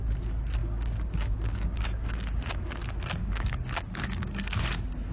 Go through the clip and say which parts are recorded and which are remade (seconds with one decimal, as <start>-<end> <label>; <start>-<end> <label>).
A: 0.0-0.6 recorded; 0.6-2.7 remade; 2.7-3.2 recorded; 3.2-4.6 remade; 4.6-5.1 recorded